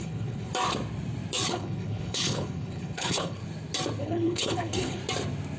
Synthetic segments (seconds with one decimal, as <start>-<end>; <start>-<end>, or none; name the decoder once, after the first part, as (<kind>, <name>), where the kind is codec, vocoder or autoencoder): 0.0-0.5 (codec, HILCodec); 1.5-3.4; 4.0-5.0